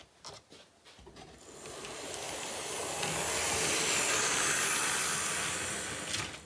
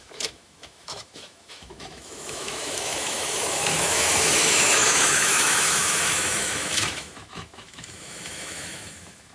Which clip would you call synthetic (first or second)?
second